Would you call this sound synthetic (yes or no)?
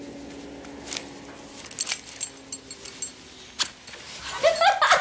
no